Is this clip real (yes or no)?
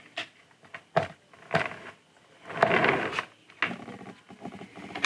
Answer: yes